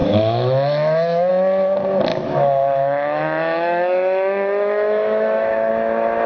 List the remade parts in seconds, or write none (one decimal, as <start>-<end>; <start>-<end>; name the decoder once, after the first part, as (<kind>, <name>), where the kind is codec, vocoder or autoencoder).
0.0-1.3 (autoencoder, DAC-VAE); 2.1-5.7